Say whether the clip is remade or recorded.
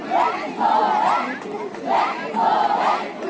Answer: recorded